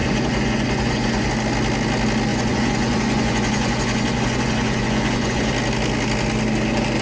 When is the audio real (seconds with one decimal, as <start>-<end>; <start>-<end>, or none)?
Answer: 1.3-2.3; 5.5-7.0